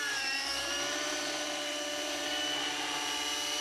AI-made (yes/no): yes